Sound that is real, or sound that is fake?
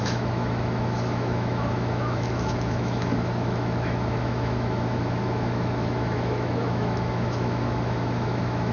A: fake